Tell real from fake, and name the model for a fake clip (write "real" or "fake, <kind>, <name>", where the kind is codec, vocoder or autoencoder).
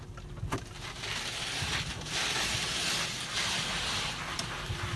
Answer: fake, vocoder, BigVGAN v2